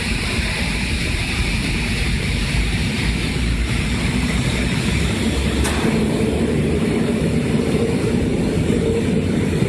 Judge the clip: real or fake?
fake